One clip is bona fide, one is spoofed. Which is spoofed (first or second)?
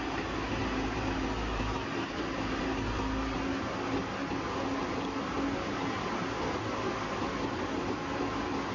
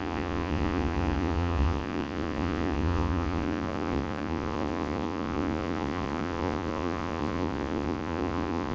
second